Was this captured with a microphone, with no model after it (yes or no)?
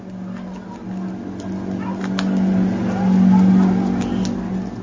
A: yes